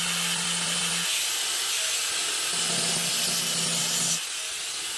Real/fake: real